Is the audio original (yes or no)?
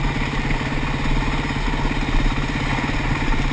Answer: yes